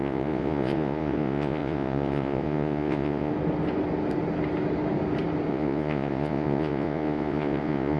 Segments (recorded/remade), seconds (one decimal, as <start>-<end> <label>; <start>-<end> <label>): 0.0-3.3 remade; 3.3-5.5 recorded; 5.5-8.0 remade